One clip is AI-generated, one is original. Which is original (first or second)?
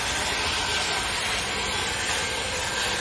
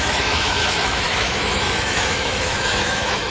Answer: first